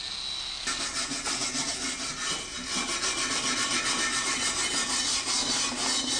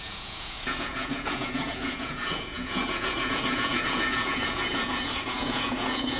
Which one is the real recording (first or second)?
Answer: first